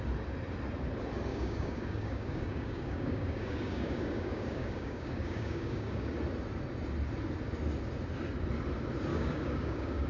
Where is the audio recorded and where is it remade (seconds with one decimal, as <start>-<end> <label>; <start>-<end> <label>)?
0.0-1.3 recorded; 1.3-6.1 remade; 6.1-9.1 recorded; 9.1-10.1 remade